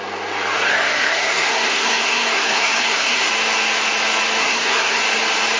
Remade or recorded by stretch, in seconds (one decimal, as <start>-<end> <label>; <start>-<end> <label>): 0.0-0.7 recorded; 0.7-3.3 remade; 3.3-4.4 recorded; 4.4-5.0 remade; 5.0-5.6 recorded